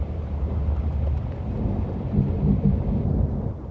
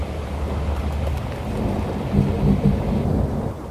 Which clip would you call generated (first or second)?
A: first